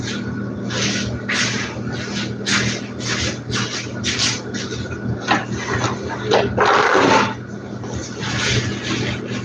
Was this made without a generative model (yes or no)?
yes